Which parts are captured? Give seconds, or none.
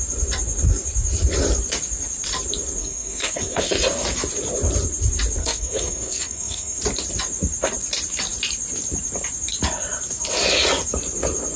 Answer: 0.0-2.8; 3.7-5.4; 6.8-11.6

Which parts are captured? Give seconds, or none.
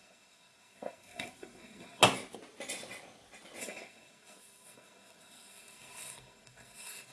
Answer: 2.0-3.6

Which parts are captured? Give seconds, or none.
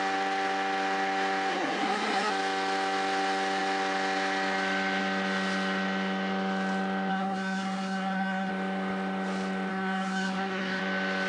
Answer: 0.0-1.5; 2.3-7.1; 8.5-9.7; 10.8-11.3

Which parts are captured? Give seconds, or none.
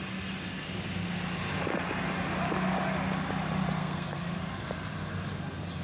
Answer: 0.0-3.8; 4.4-5.8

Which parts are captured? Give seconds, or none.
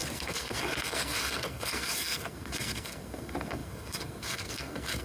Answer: none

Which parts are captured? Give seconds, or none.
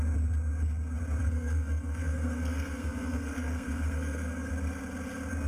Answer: 0.0-1.2; 4.5-5.5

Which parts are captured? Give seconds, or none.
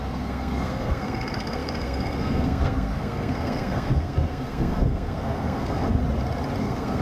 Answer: 6.0-6.6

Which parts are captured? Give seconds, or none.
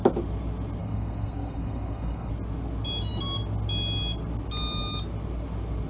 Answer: 0.0-0.8; 2.3-5.9